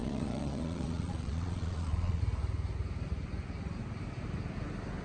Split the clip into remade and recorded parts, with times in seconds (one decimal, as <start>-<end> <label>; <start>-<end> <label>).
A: 0.0-2.2 remade; 2.2-5.0 recorded